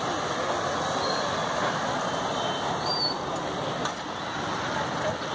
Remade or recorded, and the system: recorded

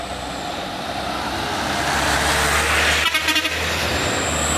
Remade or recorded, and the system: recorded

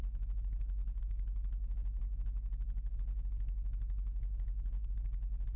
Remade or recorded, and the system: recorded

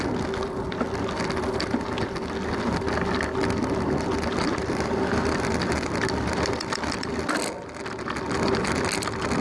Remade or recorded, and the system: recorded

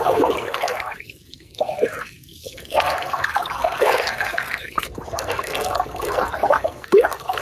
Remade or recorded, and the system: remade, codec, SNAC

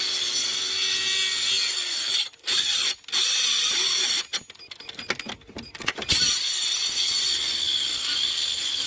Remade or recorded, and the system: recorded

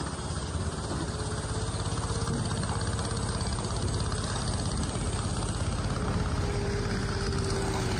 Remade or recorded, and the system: recorded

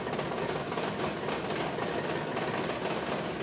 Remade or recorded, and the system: recorded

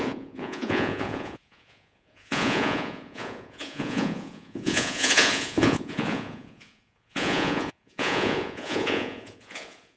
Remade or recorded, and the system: remade, vocoder, Vocos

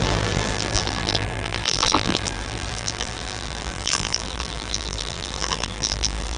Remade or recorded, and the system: remade, vocoder, BigVGAN v2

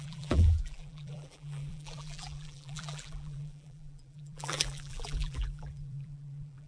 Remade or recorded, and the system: remade, vocoder, BigVGAN v2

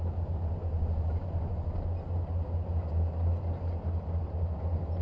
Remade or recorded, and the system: recorded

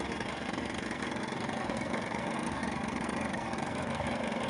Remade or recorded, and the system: remade, codec, SNAC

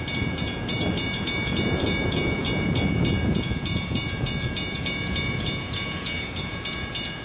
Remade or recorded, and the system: remade, vocoder, Vocos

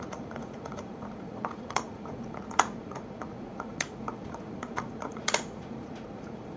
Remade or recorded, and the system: remade, vocoder, Vocos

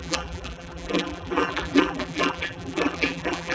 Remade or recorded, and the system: remade, vocoder, BigVGAN v2